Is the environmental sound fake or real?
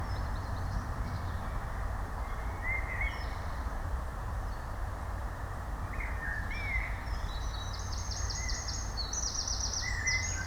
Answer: fake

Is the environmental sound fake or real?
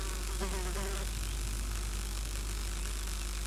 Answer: real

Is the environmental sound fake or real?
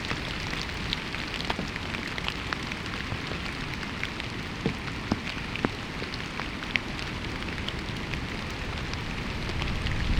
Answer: real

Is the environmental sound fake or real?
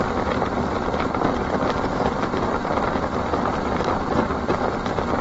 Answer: real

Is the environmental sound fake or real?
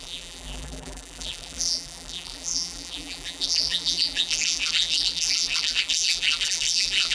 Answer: fake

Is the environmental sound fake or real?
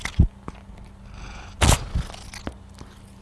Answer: real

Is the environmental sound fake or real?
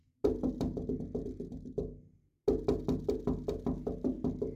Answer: real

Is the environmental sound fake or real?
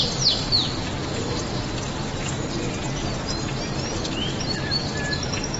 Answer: real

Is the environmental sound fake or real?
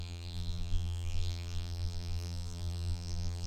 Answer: fake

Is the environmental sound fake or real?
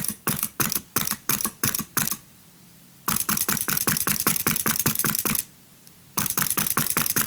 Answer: fake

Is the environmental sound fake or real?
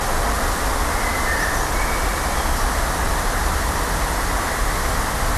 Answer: real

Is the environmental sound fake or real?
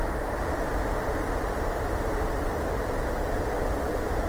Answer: fake